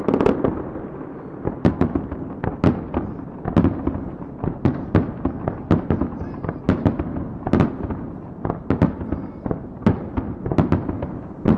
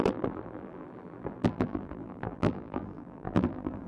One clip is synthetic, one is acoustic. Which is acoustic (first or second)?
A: first